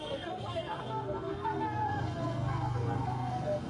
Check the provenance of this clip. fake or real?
fake